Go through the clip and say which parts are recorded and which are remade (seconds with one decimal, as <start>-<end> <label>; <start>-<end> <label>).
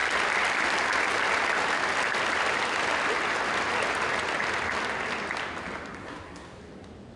0.0-6.0 recorded; 6.0-6.6 remade; 6.6-7.2 recorded